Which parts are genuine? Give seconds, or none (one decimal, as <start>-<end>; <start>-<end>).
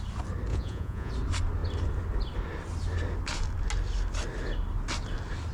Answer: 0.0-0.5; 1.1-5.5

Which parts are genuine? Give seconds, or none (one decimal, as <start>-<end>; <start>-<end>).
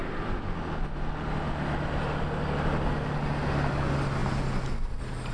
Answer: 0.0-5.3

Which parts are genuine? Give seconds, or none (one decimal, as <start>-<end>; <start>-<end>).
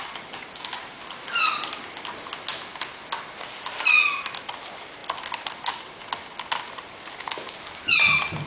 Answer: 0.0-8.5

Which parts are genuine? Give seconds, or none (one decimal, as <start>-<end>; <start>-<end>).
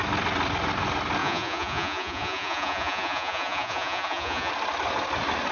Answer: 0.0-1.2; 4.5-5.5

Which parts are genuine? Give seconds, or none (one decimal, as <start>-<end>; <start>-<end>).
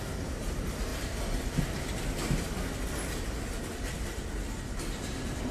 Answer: 0.0-5.5